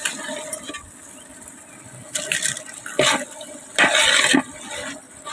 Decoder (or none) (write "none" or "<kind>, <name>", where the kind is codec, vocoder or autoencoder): none